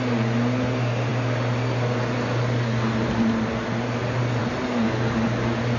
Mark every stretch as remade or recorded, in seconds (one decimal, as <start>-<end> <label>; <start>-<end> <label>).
0.0-5.8 recorded